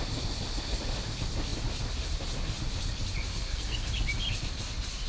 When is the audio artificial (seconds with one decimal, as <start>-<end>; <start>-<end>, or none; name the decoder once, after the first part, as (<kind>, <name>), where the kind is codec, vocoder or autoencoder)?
3.3-3.9 (codec, SNAC)